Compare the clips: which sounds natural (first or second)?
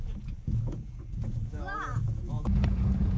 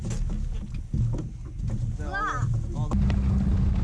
second